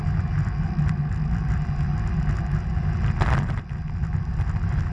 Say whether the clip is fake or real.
real